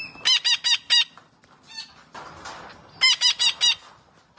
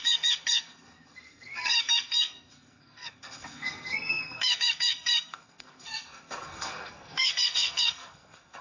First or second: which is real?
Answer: first